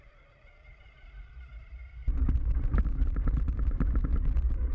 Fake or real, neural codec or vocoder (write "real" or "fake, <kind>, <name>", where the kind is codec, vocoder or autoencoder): fake, vocoder, BigVGAN v2